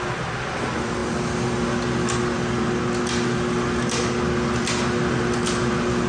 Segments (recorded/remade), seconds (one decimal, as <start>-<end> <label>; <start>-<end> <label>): 0.0-6.1 recorded